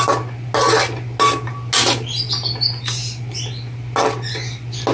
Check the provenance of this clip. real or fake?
real